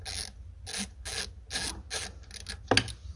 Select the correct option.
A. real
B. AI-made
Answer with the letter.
A